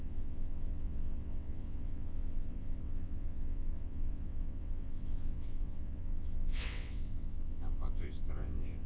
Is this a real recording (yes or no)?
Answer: no